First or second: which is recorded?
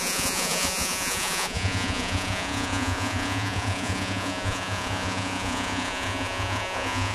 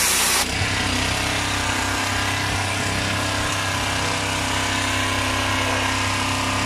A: second